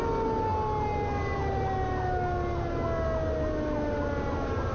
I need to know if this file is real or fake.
real